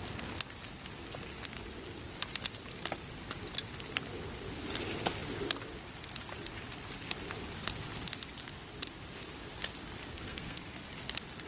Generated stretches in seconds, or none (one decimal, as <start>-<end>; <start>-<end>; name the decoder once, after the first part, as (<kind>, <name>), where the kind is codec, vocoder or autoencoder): 10.1-10.6 (codec, SNAC)